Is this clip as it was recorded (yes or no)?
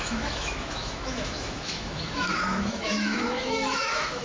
no